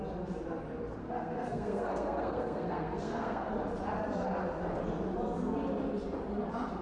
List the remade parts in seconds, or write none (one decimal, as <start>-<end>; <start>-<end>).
1.0-3.5